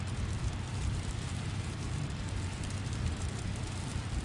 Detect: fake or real fake